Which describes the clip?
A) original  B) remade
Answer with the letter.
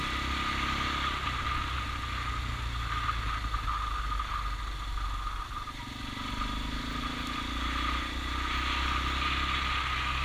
A